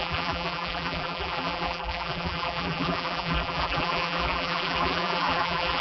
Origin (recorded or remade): remade